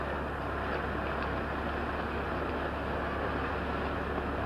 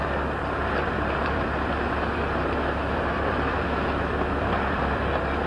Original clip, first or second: first